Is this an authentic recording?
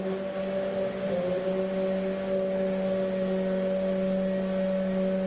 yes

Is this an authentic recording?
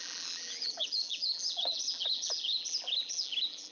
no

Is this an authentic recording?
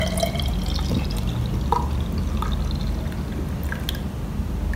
yes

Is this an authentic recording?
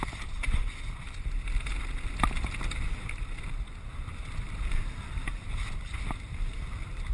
yes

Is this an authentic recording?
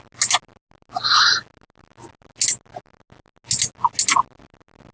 yes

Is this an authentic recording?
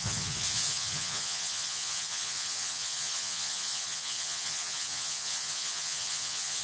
no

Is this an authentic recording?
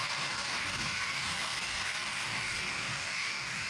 no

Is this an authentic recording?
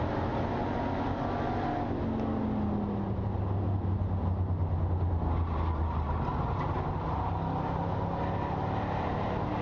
yes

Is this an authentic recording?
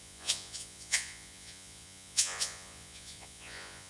no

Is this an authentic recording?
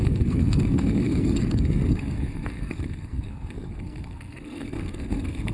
no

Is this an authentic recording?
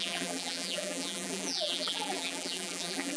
no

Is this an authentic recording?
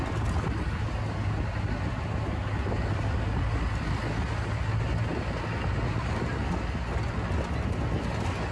yes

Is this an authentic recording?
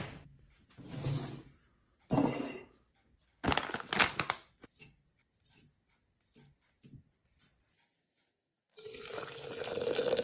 yes